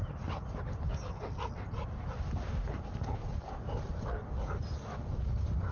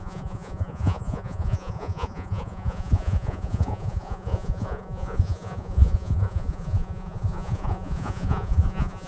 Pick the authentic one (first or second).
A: first